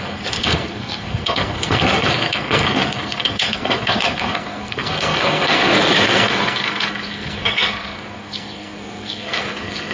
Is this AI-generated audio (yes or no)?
yes